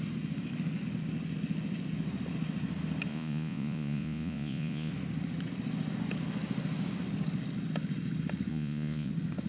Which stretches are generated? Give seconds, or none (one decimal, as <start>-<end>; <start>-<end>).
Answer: 3.1-4.9; 8.5-9.1